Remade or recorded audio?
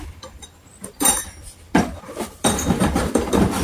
remade